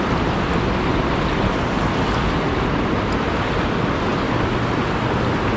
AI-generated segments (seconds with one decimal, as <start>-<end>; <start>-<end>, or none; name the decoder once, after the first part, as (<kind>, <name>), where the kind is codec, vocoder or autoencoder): none

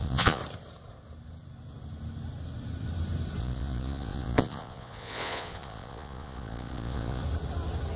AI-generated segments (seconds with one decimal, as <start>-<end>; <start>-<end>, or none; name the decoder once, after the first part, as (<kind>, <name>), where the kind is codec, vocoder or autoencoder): 0.0-0.4 (vocoder, Vocos); 3.4-7.2

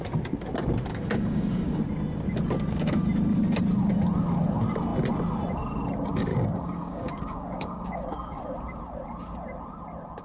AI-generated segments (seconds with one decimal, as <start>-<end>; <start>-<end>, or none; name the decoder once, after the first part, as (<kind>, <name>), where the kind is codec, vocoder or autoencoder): 0.9-1.8 (codec, DAC); 6.3-8.4

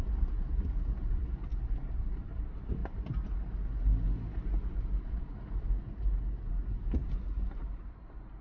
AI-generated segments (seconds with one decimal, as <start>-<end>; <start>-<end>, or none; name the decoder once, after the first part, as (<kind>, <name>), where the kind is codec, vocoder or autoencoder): none

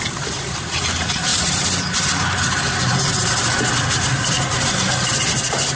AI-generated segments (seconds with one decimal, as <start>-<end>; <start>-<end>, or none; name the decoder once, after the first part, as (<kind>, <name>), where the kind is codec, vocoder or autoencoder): none

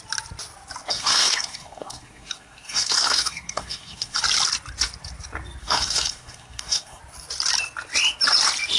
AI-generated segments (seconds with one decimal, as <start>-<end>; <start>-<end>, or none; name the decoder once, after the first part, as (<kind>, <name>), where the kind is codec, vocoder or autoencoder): 0.9-4.2 (codec, SNAC); 5.6-7.0